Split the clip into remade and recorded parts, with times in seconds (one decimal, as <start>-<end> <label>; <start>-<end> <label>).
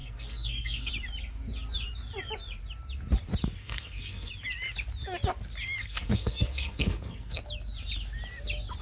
0.0-0.9 remade; 0.9-3.6 recorded; 3.6-4.3 remade; 4.3-5.8 recorded; 5.8-7.4 remade; 7.4-8.8 recorded